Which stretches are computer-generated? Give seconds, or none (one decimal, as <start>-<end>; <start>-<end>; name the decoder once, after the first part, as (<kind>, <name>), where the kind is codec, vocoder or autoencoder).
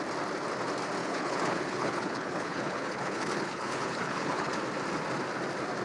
1.0-4.5 (codec, HILCodec)